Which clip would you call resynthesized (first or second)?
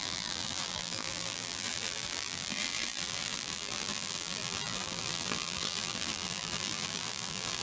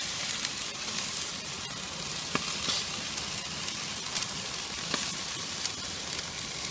first